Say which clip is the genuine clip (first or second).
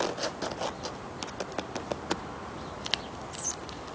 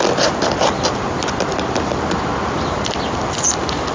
first